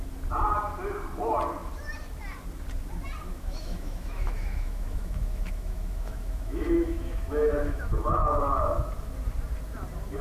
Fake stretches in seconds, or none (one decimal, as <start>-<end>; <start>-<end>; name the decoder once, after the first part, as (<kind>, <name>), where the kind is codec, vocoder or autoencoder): 3.3-8.4 (autoencoder, DAC-VAE)